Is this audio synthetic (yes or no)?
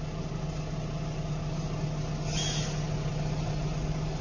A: no